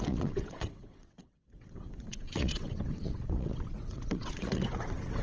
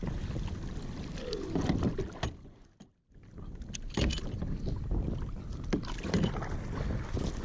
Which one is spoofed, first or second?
first